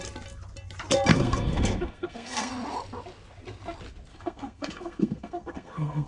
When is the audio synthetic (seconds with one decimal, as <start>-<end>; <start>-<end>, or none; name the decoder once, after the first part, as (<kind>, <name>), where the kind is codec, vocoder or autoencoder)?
1.1-2.5 (codec, SNAC); 4.1-6.1